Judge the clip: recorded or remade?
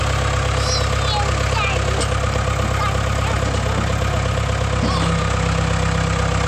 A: recorded